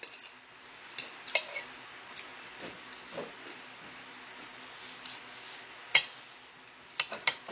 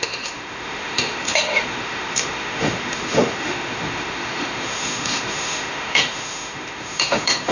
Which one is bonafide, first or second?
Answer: first